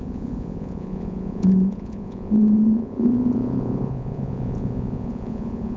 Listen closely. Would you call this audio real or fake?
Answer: fake